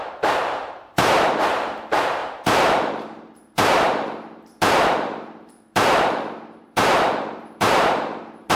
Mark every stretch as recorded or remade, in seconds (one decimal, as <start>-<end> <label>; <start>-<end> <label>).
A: 0.0-8.6 remade